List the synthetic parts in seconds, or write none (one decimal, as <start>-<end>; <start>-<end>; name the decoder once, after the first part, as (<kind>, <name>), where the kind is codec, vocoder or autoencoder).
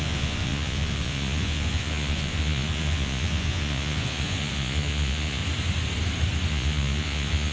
0.0-5.4 (vocoder, Vocos); 6.5-7.5